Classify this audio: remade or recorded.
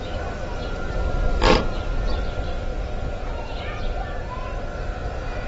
remade